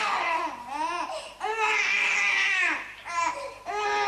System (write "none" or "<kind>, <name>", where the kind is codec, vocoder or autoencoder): none